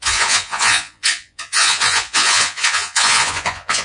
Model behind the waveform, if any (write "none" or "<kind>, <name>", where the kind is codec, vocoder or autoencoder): vocoder, Vocos